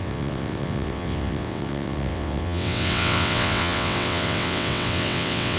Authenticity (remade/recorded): remade